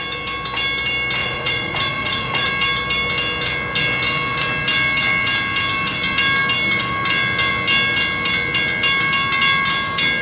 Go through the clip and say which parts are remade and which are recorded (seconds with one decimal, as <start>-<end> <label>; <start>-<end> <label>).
0.0-1.2 recorded; 1.2-2.5 remade; 2.5-10.2 recorded